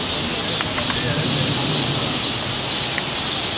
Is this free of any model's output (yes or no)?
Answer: yes